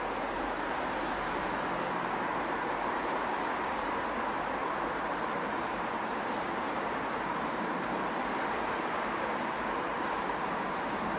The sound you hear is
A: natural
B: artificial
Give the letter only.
B